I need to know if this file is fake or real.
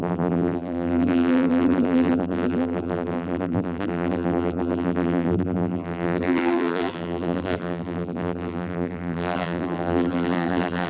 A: fake